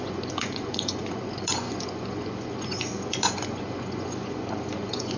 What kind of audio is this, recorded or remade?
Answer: remade